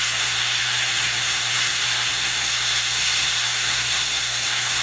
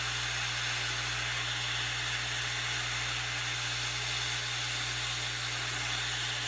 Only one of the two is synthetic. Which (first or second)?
first